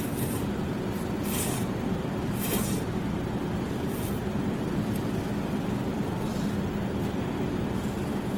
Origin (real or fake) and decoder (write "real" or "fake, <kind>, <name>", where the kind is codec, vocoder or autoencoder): fake, vocoder, BigVGAN v2